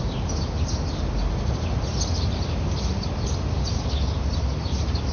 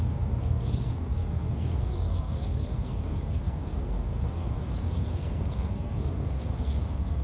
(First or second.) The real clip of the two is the first